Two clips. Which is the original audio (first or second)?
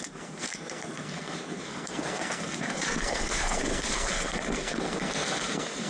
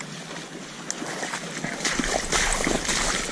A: second